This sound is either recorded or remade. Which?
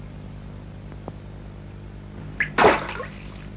recorded